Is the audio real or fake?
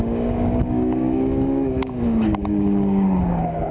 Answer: fake